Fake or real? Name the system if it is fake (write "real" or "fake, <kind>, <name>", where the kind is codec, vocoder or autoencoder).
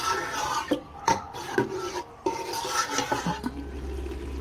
real